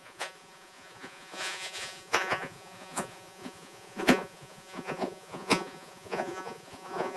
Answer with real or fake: fake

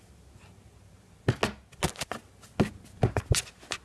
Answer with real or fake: real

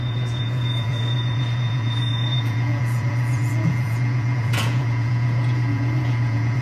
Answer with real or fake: fake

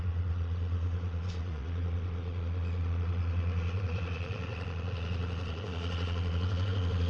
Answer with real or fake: fake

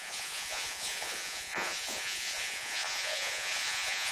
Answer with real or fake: fake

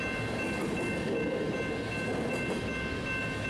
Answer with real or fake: real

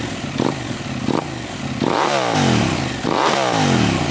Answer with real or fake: real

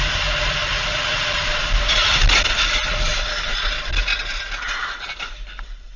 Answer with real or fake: real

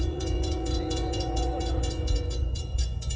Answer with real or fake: fake